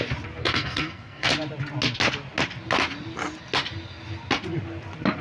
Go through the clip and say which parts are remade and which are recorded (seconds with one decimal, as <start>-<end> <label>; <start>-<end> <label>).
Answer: 0.0-0.4 recorded; 0.4-1.3 remade; 1.3-5.2 recorded